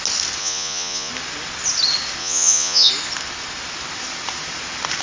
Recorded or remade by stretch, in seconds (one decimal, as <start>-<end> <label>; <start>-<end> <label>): 0.0-0.4 recorded; 0.4-1.1 remade; 1.1-2.2 recorded; 2.2-2.9 remade; 2.9-5.0 recorded